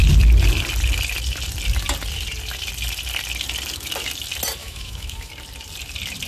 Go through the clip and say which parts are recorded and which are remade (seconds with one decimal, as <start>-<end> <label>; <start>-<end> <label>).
0.0-4.6 recorded; 4.6-5.3 remade; 5.3-6.3 recorded